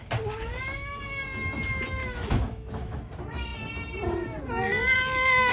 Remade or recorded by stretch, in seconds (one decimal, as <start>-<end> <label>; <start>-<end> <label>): 0.0-2.0 recorded; 2.0-3.0 remade; 3.0-5.5 recorded